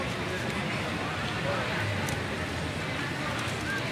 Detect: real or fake real